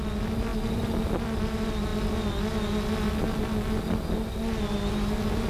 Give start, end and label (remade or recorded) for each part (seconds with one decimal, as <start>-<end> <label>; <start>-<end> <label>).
0.0-5.5 recorded